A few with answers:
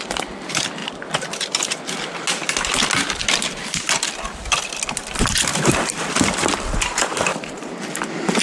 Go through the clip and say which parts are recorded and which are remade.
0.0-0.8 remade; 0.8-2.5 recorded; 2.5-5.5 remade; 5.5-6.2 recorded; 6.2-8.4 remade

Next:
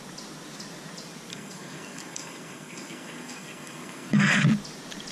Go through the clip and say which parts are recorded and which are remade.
0.0-1.3 recorded; 1.3-4.4 remade; 4.4-5.1 recorded